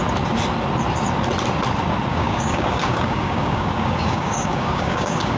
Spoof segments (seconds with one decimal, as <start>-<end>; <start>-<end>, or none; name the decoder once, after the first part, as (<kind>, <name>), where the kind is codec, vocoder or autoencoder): 2.1-5.4 (codec, DAC)